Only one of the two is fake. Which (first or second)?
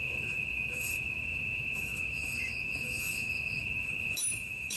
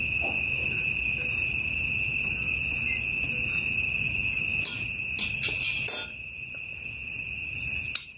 first